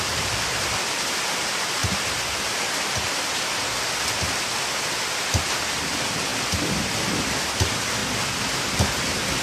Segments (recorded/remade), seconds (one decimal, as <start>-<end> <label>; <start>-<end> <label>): 0.0-1.8 remade; 1.8-5.3 recorded; 5.3-8.0 remade; 8.0-8.6 recorded; 8.6-9.4 remade